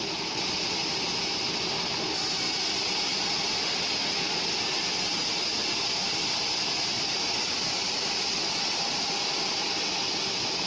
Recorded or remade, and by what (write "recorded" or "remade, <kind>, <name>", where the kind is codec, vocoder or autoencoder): recorded